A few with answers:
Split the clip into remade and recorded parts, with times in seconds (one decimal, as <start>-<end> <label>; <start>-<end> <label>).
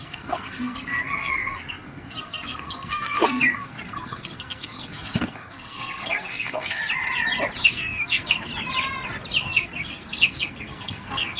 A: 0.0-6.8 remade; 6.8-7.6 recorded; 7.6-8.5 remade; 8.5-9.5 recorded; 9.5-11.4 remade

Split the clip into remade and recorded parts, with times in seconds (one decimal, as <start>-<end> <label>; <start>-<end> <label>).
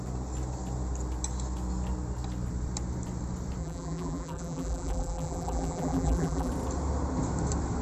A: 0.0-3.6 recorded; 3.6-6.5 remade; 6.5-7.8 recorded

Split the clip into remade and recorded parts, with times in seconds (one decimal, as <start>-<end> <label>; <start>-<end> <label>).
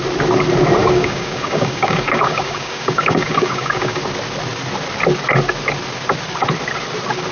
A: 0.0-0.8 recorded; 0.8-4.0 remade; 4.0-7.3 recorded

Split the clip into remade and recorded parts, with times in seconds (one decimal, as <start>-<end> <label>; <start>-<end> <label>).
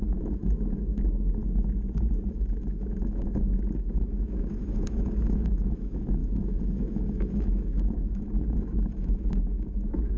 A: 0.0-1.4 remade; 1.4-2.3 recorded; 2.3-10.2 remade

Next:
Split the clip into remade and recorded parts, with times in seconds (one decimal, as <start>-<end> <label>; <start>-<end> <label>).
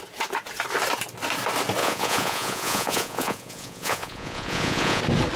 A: 0.0-1.8 recorded; 1.8-5.0 remade; 5.0-5.4 recorded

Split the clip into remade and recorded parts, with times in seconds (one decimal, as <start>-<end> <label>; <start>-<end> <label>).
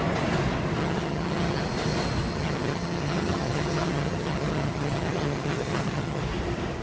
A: 0.0-0.8 recorded; 0.8-1.6 remade; 1.6-2.3 recorded; 2.3-6.2 remade; 6.2-6.8 recorded